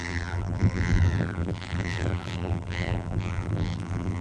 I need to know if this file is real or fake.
fake